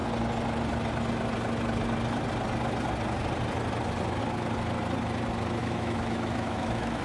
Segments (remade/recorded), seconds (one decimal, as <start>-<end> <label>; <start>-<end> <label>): 0.0-5.6 recorded; 5.6-7.0 remade